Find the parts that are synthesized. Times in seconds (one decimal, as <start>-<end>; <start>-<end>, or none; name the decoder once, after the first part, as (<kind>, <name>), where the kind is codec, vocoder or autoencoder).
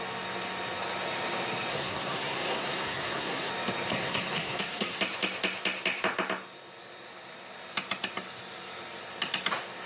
1.7-3.5 (codec, SNAC); 3.9-5.0